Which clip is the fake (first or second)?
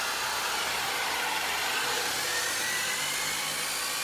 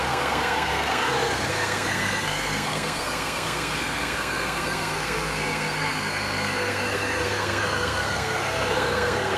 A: second